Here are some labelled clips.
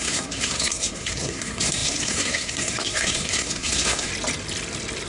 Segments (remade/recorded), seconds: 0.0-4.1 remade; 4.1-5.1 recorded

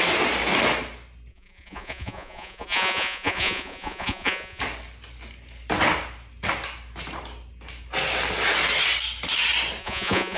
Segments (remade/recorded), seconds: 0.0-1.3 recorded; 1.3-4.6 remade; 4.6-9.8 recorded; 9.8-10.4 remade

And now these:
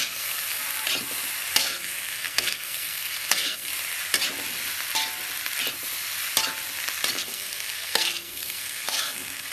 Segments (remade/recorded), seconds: 0.0-0.6 remade; 0.6-1.5 recorded; 1.5-3.7 remade; 3.7-7.1 recorded; 7.1-9.5 remade

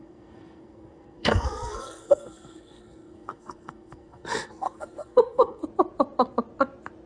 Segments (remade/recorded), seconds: 0.0-5.6 remade; 5.6-7.1 recorded

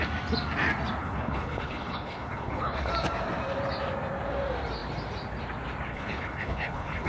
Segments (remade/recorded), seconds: 0.0-1.0 recorded; 1.0-2.9 remade; 2.9-5.9 recorded; 5.9-7.1 remade